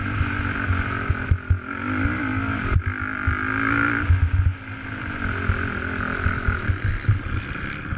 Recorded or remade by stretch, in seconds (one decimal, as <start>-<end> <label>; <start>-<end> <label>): 0.0-8.0 recorded